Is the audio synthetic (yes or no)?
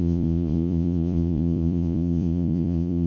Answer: yes